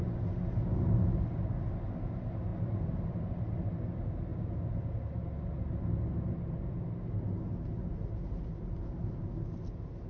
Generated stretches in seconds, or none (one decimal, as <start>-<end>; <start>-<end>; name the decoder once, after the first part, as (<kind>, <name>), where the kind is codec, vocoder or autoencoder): none